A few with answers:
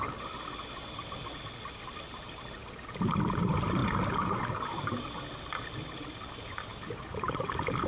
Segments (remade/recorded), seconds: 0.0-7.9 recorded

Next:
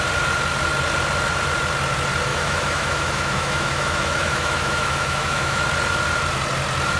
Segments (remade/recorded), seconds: 0.0-2.3 recorded; 2.3-5.6 remade; 5.6-7.0 recorded

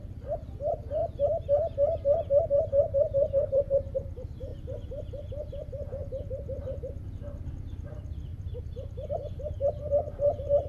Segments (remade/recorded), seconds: 0.0-1.0 remade; 1.0-2.5 recorded; 2.5-4.5 remade; 4.5-5.2 recorded; 5.2-10.7 remade

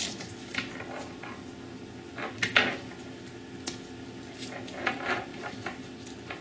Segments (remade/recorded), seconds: 0.0-5.3 recorded; 5.3-5.9 remade; 5.9-6.4 recorded

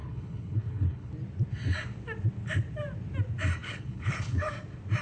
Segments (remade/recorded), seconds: 0.0-1.1 remade; 1.1-3.6 recorded; 3.6-4.5 remade; 4.5-5.0 recorded

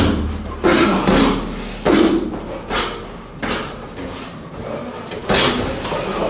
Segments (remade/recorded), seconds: 0.0-6.3 recorded

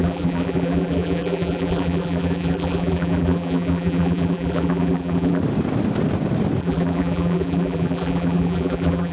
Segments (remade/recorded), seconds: 0.0-5.4 remade; 5.4-6.6 recorded; 6.6-9.1 remade

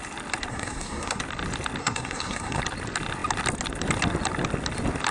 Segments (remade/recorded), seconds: 0.0-0.5 recorded; 0.5-1.2 remade; 1.2-1.8 recorded; 1.8-2.6 remade; 2.6-5.1 recorded